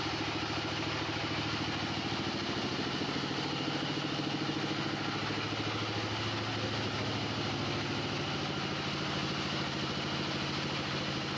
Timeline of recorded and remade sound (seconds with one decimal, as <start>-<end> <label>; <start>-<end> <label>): 0.0-11.4 recorded

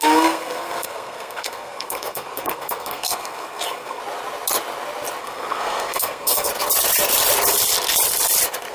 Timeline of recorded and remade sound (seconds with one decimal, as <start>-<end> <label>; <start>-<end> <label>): 0.0-4.0 remade; 4.0-5.2 recorded; 5.2-6.5 remade; 6.5-8.7 recorded